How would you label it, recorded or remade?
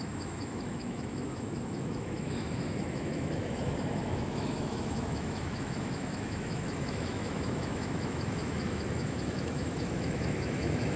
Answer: remade